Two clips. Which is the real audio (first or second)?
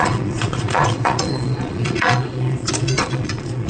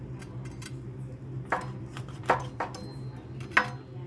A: second